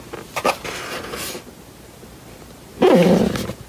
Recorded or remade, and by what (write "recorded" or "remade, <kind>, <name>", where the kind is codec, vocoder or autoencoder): recorded